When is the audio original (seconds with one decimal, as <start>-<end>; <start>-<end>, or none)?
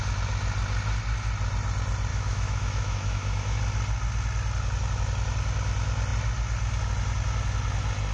0.0-2.1; 3.6-8.1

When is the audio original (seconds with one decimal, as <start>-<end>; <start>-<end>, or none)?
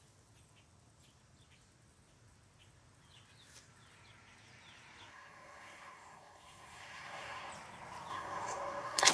0.0-5.1; 7.5-8.1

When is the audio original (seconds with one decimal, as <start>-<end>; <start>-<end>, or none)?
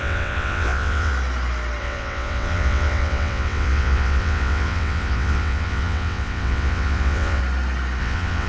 1.1-1.8; 7.4-8.0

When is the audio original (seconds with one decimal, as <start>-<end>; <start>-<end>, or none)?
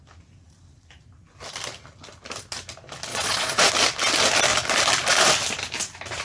0.0-3.1; 3.7-6.2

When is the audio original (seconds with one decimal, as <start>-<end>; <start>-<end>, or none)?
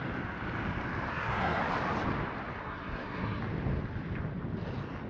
0.0-1.1; 1.6-2.6; 3.4-5.1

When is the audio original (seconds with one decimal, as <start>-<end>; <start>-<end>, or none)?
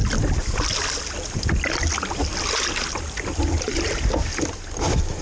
0.0-5.2